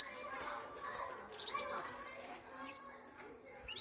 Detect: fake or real real